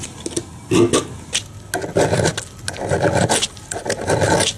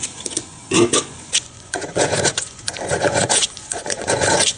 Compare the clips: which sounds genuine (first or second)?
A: first